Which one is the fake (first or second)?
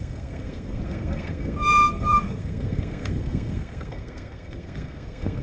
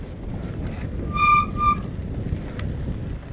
first